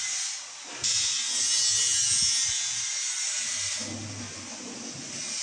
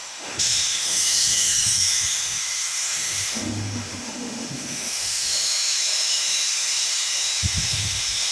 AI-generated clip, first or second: second